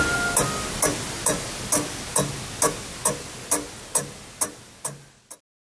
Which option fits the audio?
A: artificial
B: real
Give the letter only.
B